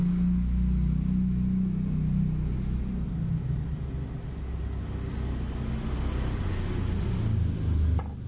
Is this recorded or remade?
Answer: recorded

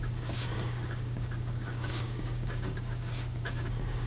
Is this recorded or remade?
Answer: remade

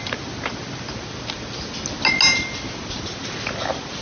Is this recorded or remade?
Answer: recorded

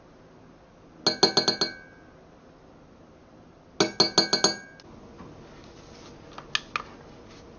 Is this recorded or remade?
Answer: recorded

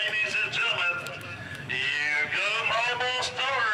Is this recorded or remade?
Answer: remade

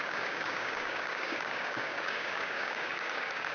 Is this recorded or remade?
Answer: remade